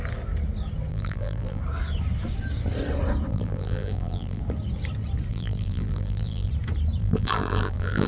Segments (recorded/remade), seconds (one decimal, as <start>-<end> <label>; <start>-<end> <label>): 0.0-0.9 recorded; 0.9-1.6 remade; 1.6-3.3 recorded; 3.3-4.4 remade; 4.4-5.3 recorded; 5.3-6.5 remade; 6.5-7.0 recorded; 7.0-8.1 remade